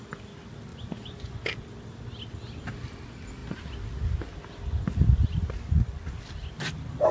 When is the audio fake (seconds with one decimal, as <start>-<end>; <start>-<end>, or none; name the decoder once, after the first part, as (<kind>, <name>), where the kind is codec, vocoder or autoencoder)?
0.7-1.4 (vocoder, Vocos)